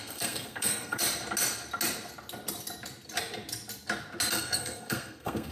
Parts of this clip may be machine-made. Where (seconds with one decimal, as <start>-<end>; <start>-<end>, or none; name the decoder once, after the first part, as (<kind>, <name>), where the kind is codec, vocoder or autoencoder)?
0.0-1.0 (codec, SNAC); 4.3-5.5